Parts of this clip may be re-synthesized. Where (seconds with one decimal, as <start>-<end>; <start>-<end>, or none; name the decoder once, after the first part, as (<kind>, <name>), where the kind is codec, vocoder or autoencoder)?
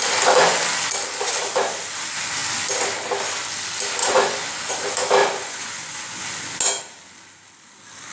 4.0-4.7 (vocoder, Vocos); 5.2-6.2